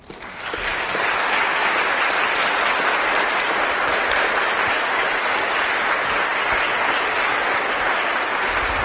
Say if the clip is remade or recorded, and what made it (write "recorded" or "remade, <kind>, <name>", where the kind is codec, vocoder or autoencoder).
recorded